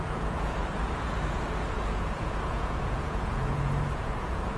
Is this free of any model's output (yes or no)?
no